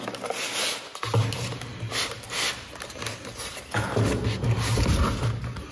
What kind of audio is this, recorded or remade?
recorded